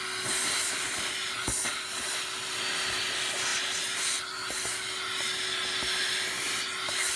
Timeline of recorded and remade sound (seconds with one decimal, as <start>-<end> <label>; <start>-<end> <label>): 0.0-7.2 recorded